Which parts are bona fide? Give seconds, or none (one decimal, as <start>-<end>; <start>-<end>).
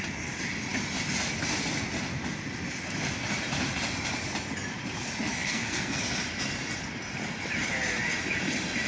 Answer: 0.0-5.3; 6.0-8.9